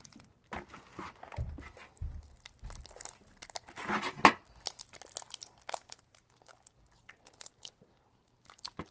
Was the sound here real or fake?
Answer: real